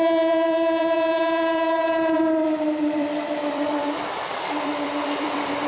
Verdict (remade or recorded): remade